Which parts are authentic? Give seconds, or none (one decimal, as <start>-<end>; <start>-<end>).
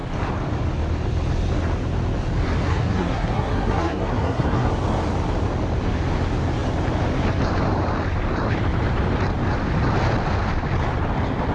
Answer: 0.0-2.7; 4.7-11.5